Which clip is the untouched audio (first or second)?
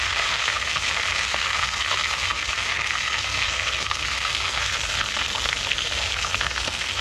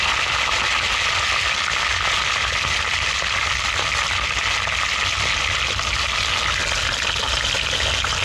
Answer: second